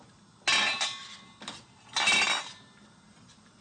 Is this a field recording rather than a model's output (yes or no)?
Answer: yes